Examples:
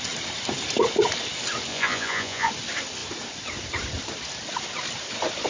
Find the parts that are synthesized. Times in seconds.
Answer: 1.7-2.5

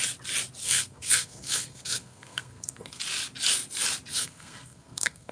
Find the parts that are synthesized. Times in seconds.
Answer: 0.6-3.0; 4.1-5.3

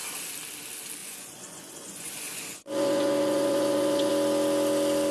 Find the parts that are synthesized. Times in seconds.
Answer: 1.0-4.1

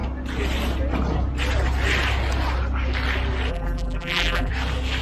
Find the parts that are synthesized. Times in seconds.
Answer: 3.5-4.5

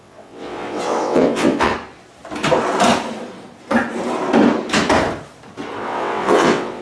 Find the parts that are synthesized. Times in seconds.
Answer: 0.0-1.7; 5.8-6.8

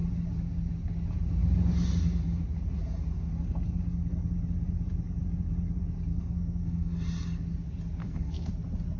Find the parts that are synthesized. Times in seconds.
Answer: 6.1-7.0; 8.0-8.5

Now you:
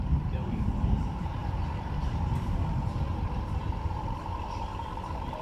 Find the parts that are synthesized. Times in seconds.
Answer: 0.0-5.4

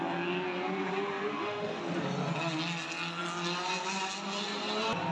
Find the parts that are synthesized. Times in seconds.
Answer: 1.3-1.8